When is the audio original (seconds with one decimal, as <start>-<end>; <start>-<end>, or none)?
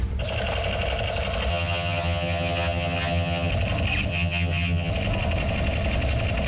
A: 0.0-1.5; 3.5-4.1; 4.9-6.5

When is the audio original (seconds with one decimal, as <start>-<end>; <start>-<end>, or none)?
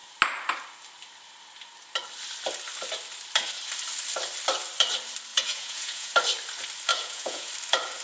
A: 0.0-5.3; 6.1-6.9; 7.5-8.0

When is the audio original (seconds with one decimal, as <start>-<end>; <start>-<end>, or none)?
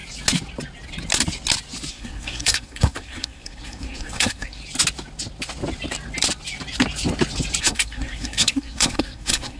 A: 0.0-1.9; 4.6-7.6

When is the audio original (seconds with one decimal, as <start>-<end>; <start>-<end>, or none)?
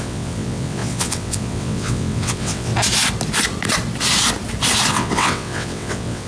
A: 2.7-4.9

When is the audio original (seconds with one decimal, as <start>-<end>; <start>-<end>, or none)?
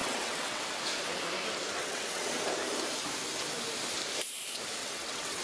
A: 0.6-1.8; 2.4-4.8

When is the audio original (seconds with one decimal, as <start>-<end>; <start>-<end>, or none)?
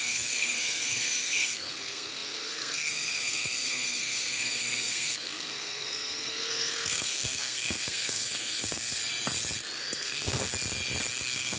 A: 9.0-9.8; 10.5-11.1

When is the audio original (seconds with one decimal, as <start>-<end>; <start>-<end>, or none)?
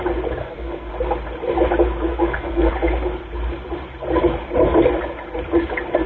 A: 0.0-0.4; 0.9-2.1; 2.7-6.1